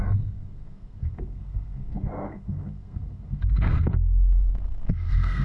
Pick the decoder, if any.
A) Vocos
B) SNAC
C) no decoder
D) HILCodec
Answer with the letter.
B